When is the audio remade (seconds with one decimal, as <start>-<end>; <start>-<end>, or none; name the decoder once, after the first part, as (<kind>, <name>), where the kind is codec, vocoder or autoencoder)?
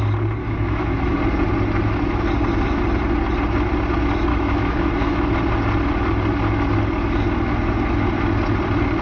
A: 0.4-1.2 (autoencoder, DAC-VAE); 4.3-5.4